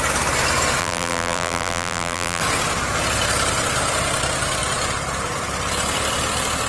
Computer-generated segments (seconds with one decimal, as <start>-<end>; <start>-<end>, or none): 0.8-2.4